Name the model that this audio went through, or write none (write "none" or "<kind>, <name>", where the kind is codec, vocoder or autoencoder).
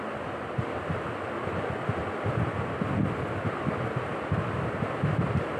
none